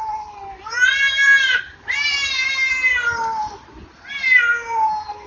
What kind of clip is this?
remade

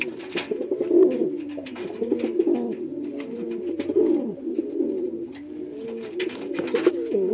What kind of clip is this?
recorded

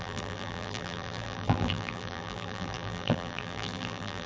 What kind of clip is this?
remade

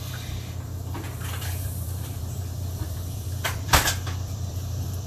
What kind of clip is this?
remade